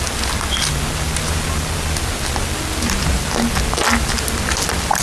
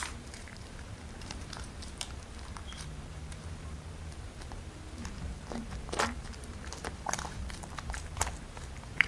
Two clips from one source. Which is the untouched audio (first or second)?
first